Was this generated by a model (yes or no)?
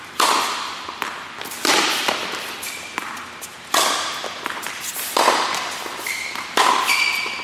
no